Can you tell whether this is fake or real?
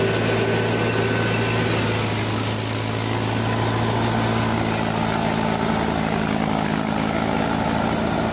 real